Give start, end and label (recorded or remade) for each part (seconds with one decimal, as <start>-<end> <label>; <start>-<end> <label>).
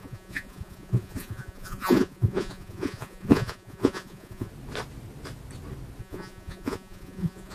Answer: 0.0-4.5 remade; 4.5-6.0 recorded; 6.0-7.5 remade